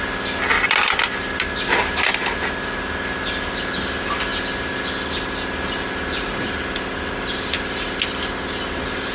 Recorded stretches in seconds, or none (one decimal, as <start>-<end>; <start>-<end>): 0.0-9.1